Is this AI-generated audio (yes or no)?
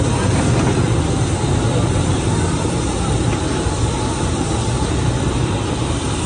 no